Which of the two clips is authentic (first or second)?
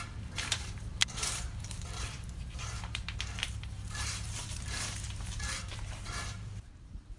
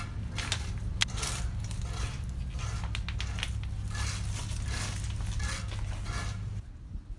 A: second